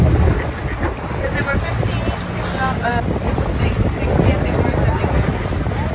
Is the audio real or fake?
real